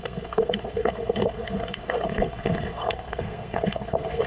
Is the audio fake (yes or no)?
yes